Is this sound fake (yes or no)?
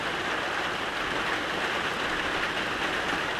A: no